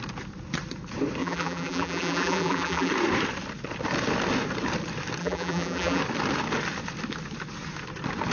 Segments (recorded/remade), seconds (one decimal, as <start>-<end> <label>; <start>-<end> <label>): 0.0-1.2 recorded; 1.2-2.9 remade; 2.9-5.2 recorded; 5.2-6.0 remade; 6.0-8.3 recorded